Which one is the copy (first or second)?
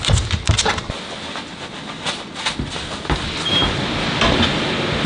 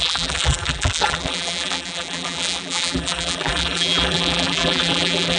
second